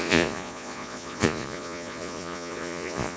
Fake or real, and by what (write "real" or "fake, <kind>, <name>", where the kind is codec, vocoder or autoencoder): fake, vocoder, Vocos